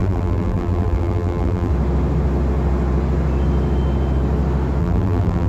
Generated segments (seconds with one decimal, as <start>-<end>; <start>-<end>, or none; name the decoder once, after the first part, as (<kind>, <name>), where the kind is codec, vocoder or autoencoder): 0.0-1.7 (vocoder, BigVGAN v2); 4.8-5.5